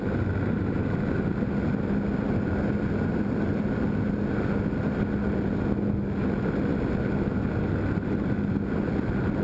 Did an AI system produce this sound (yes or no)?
no